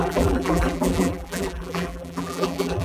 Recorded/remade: remade